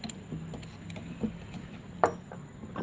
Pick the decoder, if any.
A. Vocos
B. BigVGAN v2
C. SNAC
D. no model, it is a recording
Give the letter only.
D